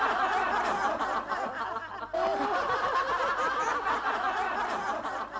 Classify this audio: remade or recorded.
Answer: recorded